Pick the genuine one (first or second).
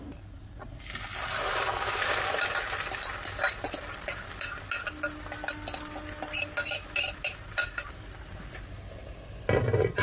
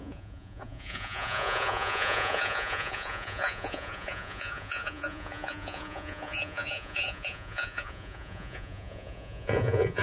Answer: first